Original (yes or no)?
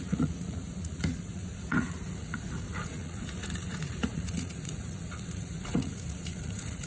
no